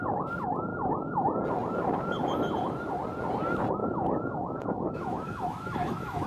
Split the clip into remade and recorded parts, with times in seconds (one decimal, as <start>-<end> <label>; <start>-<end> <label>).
0.0-3.8 recorded; 3.8-6.3 remade